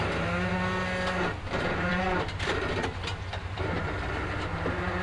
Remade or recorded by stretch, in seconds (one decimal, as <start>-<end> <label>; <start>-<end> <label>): 0.0-1.9 recorded; 1.9-2.4 remade; 2.4-3.1 recorded; 3.1-3.8 remade; 3.8-5.0 recorded